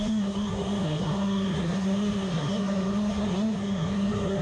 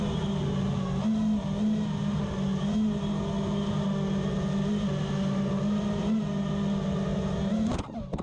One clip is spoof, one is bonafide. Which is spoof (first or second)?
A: first